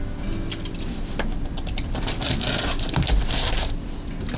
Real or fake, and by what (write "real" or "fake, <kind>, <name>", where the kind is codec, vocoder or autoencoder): real